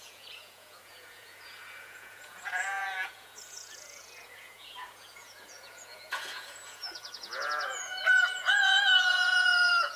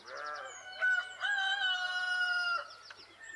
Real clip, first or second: second